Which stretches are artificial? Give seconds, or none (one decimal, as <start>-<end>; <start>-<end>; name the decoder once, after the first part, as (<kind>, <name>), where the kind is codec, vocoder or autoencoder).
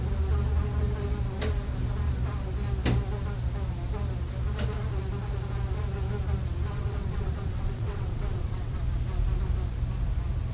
6.7-8.8 (vocoder, WaveNeXt)